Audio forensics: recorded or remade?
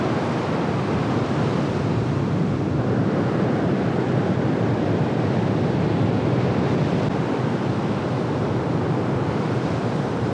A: recorded